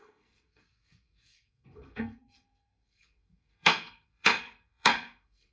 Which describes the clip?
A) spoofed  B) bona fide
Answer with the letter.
A